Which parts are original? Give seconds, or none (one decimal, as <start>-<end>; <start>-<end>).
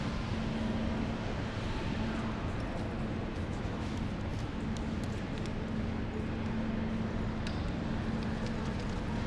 0.0-3.3; 3.9-9.3